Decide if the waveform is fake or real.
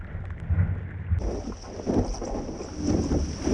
real